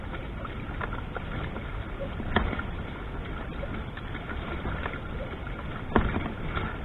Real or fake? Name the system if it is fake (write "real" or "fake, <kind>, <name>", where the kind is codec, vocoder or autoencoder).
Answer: real